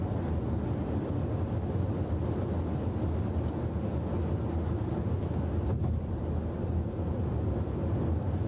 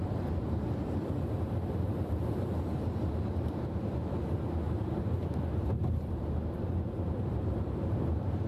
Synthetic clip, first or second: second